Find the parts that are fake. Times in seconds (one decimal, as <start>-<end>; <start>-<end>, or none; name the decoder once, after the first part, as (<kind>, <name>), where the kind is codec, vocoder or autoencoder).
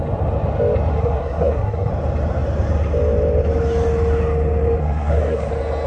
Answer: 0.9-1.9 (codec, SNAC); 4.8-5.5